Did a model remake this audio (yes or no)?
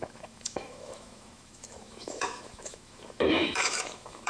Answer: yes